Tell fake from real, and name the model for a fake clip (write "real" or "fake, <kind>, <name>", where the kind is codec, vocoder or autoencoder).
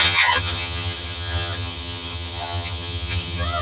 fake, vocoder, HiFi-GAN